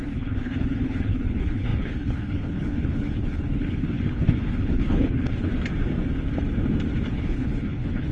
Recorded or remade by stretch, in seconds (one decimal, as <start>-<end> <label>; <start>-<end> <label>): 0.0-5.5 remade; 5.5-7.1 recorded; 7.1-8.1 remade